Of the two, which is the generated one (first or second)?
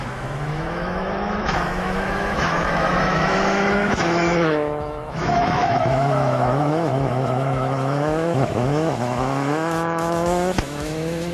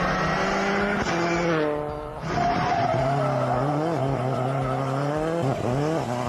first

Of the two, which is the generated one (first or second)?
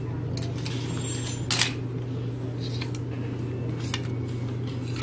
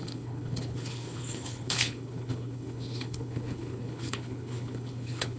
second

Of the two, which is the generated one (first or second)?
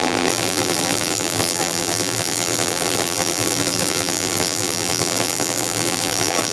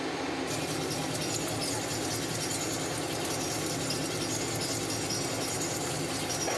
first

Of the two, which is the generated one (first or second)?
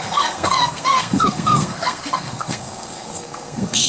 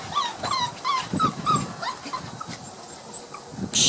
first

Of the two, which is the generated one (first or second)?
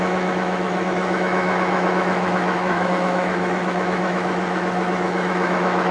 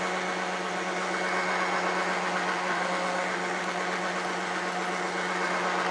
first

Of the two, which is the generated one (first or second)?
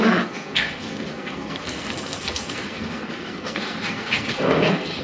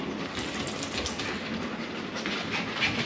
first